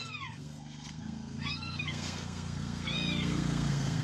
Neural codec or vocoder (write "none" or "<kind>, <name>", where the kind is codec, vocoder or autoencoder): codec, SNAC